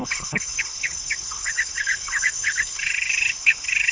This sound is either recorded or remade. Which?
remade